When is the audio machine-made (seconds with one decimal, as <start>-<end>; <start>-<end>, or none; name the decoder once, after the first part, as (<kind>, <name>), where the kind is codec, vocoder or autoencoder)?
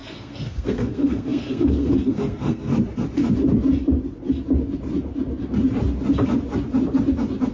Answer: 0.0-2.7 (codec, SNAC)